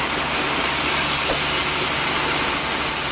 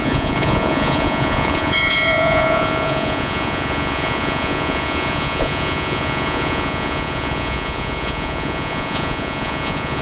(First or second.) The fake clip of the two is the second